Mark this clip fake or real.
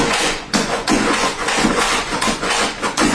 fake